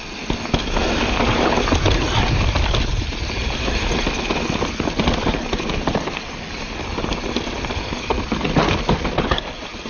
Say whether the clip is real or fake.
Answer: real